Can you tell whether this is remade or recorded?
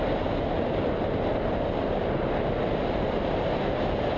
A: recorded